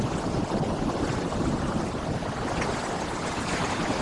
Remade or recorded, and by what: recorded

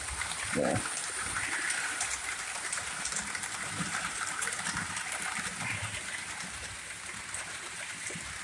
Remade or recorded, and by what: remade, vocoder, BigVGAN v2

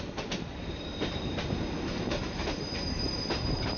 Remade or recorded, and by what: remade, vocoder, BigVGAN v2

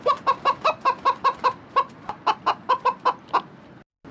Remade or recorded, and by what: recorded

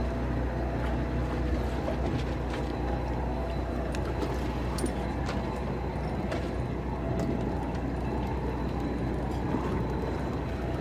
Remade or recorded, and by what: recorded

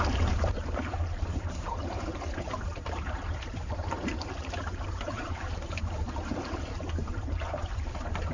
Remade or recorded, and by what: remade, vocoder, BigVGAN v2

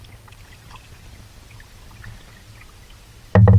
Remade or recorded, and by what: recorded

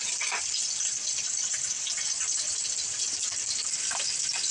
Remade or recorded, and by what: remade, vocoder, BigVGAN v2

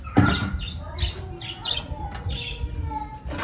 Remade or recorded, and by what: recorded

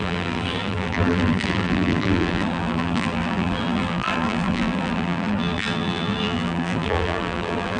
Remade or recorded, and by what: remade, vocoder, BigVGAN v2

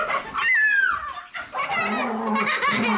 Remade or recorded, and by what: recorded